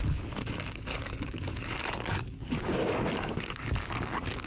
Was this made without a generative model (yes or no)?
no